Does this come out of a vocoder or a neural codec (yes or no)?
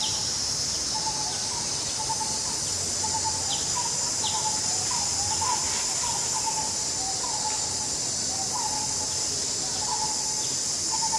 no